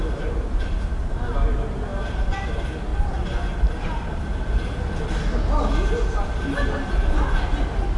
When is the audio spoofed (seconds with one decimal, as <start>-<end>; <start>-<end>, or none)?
none